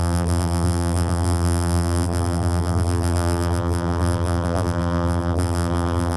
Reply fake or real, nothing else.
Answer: fake